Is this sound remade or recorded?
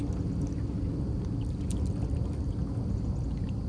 recorded